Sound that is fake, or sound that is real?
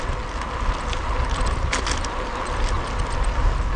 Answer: real